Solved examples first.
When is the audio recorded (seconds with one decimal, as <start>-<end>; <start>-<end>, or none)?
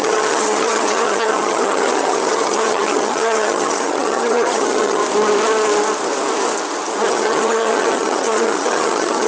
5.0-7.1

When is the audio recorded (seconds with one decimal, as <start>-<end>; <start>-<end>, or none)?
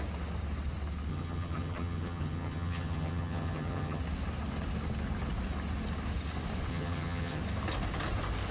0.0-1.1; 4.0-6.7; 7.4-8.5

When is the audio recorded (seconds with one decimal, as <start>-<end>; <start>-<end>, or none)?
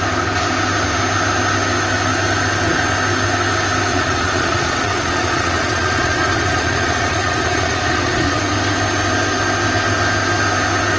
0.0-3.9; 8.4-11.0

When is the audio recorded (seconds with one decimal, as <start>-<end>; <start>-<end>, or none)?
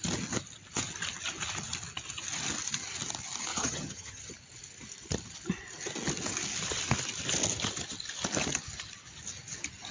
0.0-3.5; 4.3-9.9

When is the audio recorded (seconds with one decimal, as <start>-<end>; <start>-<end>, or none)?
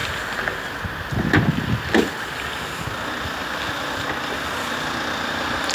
0.0-5.7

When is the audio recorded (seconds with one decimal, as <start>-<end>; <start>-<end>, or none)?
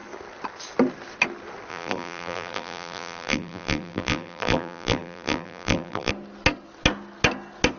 0.0-1.7; 6.1-7.8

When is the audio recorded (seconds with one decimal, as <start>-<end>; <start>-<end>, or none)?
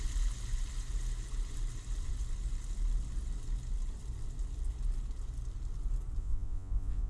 0.0-6.2